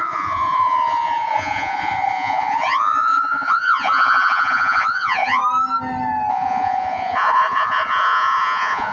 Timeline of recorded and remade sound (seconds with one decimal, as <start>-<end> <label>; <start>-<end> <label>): 0.0-5.4 remade; 5.4-6.3 recorded; 6.3-8.9 remade